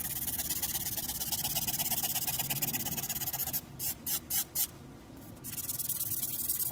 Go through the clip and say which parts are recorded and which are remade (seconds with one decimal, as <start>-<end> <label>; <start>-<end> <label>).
0.0-3.4 recorded; 3.4-4.8 remade; 4.8-6.7 recorded